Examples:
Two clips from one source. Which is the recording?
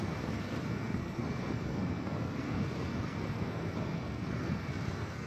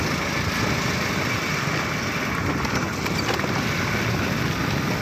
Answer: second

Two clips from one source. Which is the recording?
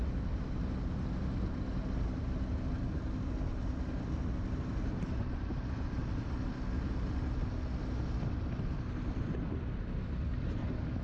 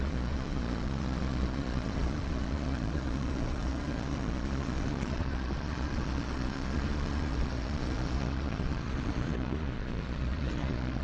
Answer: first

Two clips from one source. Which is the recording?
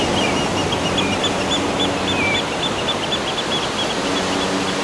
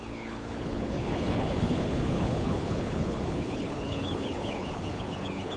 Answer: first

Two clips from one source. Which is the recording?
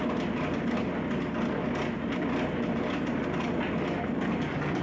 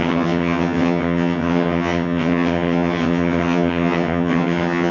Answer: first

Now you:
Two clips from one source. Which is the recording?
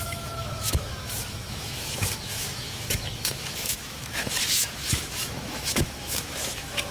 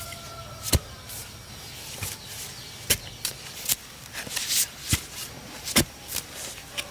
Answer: second